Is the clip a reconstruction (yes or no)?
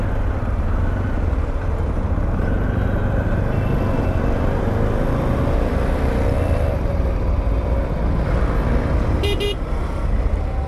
no